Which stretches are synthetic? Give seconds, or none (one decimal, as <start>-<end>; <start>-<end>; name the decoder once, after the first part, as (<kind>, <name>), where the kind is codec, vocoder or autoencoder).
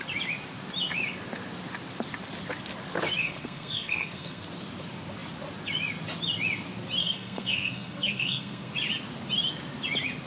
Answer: 3.2-4.4 (codec, SNAC); 7.0-8.7